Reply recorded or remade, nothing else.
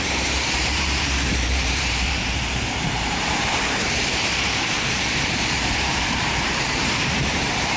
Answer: remade